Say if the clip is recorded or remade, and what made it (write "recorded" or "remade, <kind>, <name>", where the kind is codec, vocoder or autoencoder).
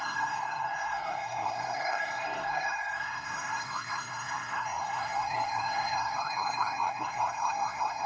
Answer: remade, codec, SNAC